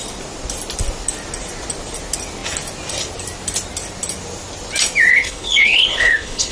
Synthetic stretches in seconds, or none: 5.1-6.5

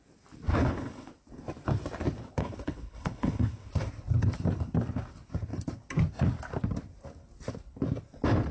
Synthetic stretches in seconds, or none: 0.5-1.1; 2.4-3.7

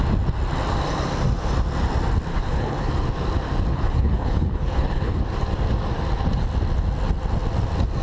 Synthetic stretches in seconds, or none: 2.3-2.9; 3.7-5.2

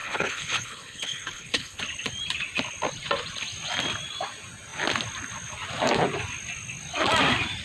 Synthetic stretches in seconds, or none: 0.0-1.8

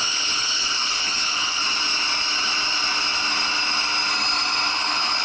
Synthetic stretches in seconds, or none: 0.0-1.6; 4.7-5.2